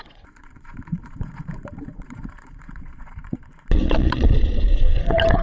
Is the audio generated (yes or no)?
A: yes